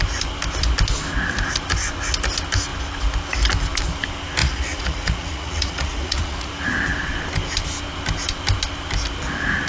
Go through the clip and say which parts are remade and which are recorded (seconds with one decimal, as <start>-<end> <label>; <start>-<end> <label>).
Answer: 0.0-4.4 recorded; 4.4-6.5 remade; 6.5-9.7 recorded